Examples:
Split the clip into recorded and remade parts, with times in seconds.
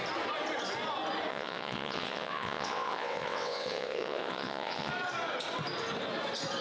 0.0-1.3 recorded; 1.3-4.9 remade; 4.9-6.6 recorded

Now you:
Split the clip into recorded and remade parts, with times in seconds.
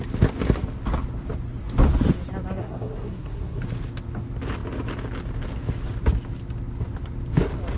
0.0-2.6 recorded; 2.6-3.6 remade; 3.6-7.8 recorded